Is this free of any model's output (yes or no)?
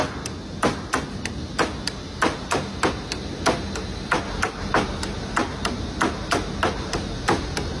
yes